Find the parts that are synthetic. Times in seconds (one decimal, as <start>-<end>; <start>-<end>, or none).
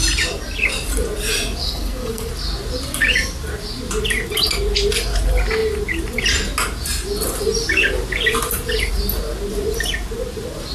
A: 1.6-2.3